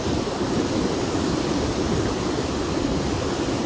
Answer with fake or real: real